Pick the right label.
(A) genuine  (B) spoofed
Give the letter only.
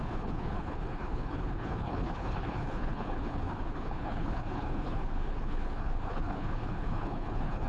B